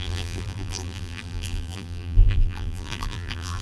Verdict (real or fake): fake